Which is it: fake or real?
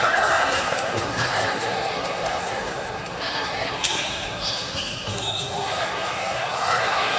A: fake